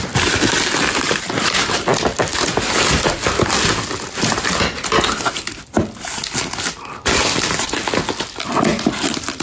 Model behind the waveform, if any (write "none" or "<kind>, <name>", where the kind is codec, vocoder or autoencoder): none